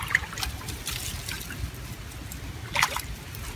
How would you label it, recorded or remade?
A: recorded